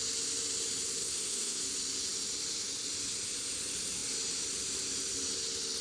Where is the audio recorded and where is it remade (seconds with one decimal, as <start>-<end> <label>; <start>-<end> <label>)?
0.0-1.0 recorded; 1.0-1.6 remade; 1.6-5.8 recorded